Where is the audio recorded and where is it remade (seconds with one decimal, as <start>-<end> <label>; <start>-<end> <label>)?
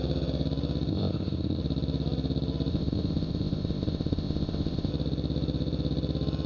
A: 0.0-0.9 recorded; 0.9-1.6 remade; 1.6-2.7 recorded; 2.7-4.9 remade; 4.9-6.5 recorded